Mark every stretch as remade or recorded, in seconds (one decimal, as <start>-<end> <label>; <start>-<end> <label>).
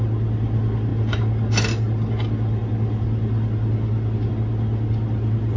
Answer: 0.0-5.6 recorded